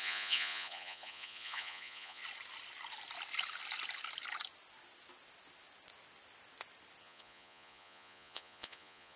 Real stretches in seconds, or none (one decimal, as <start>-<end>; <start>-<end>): 2.2-7.0